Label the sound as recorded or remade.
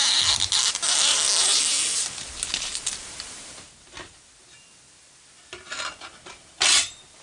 recorded